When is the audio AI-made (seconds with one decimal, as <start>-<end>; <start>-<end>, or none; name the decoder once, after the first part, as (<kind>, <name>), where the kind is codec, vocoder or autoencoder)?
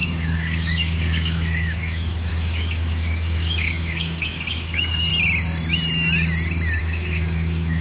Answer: 0.0-5.1 (codec, DAC); 6.8-7.8